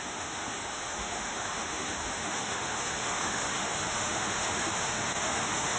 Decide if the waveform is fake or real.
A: fake